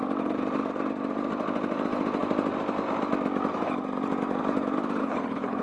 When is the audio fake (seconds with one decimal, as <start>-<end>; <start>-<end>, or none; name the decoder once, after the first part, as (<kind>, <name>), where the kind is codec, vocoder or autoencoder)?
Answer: 5.0-5.6 (codec, HILCodec)